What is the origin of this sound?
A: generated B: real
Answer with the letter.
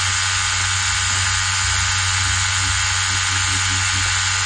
B